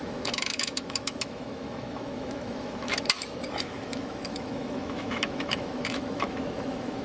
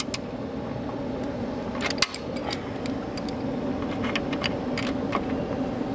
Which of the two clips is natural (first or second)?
second